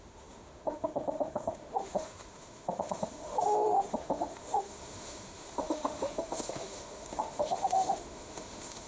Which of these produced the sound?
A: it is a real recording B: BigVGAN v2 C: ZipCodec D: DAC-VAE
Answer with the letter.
D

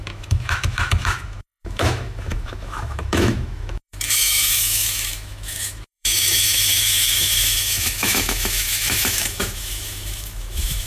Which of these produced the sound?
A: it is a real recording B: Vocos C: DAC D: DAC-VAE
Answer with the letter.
D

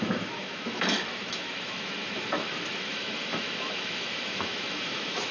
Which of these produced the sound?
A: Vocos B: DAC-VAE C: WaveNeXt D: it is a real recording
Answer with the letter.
B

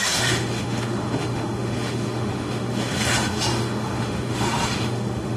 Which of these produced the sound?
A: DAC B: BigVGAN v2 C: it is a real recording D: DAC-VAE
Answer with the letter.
D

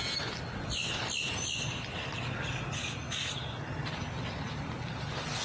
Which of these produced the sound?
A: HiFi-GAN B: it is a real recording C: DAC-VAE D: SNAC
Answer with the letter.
B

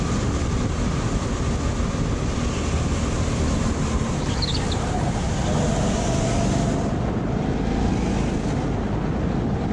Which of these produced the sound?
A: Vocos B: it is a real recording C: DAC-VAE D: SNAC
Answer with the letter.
B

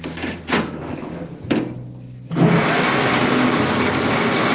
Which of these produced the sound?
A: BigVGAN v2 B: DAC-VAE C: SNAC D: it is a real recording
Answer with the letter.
D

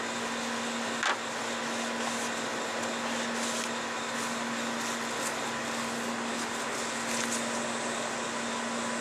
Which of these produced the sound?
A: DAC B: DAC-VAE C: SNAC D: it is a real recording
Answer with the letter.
D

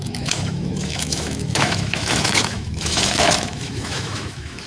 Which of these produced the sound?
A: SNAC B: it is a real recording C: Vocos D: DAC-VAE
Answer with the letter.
D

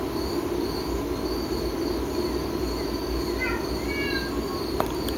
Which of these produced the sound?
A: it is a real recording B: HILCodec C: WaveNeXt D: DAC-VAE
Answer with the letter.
A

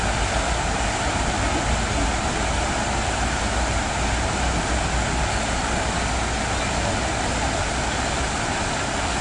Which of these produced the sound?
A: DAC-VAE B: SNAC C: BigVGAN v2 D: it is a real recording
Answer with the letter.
D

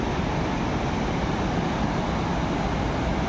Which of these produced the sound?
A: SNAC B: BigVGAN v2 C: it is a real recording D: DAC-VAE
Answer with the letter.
C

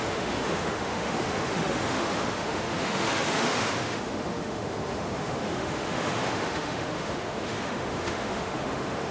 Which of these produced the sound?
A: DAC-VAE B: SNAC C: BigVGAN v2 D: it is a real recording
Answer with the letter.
A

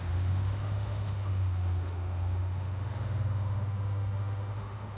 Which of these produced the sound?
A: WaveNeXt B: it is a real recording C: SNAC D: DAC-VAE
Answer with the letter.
D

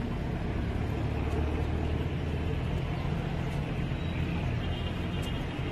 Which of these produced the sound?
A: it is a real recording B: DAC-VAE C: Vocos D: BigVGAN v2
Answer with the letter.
A